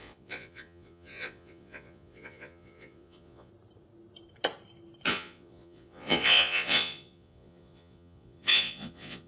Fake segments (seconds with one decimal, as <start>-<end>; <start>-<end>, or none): 0.0-3.5; 5.1-9.3